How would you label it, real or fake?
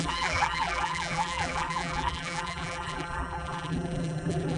fake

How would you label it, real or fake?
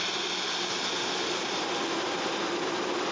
real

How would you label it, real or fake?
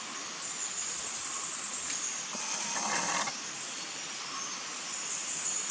real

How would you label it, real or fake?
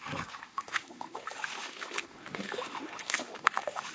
fake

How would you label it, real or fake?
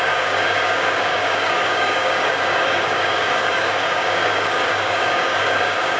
fake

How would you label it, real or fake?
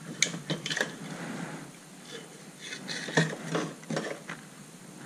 real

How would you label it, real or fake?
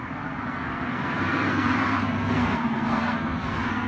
fake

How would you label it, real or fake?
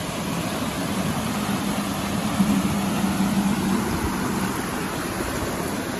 real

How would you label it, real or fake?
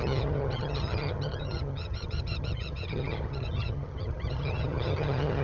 fake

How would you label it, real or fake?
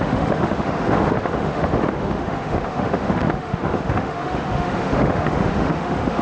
fake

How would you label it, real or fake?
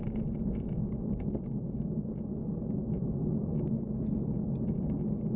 real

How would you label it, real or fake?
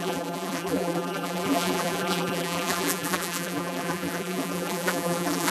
fake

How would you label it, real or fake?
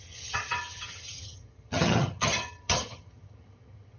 fake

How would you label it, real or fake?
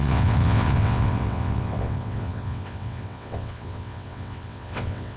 fake